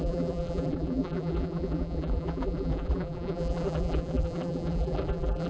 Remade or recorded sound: remade